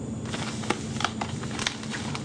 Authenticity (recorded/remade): recorded